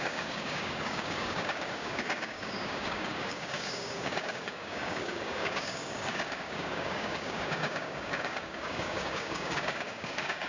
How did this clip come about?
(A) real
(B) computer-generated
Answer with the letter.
B